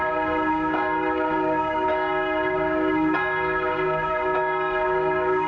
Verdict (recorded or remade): remade